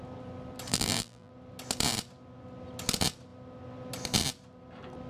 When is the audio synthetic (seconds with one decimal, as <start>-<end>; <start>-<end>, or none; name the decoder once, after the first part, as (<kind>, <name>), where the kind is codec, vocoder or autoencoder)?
0.7-1.3 (vocoder, BigVGAN v2)